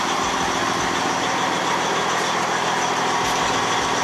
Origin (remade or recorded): recorded